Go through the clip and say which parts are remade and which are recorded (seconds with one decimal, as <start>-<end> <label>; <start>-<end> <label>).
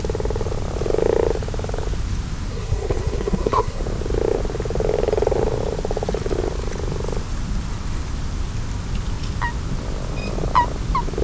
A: 0.0-2.5 recorded; 2.5-3.8 remade; 3.8-11.2 recorded